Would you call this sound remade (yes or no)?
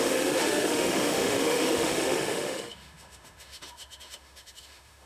yes